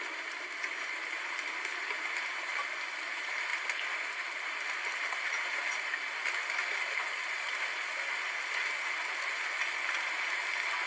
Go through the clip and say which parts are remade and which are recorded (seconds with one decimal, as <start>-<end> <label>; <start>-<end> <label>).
0.0-10.9 recorded